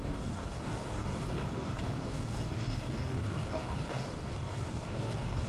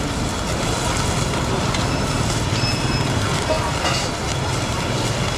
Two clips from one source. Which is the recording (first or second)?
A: second